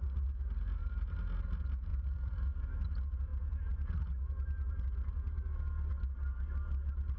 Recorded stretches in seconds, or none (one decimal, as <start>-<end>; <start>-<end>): 1.2-1.9; 2.5-7.2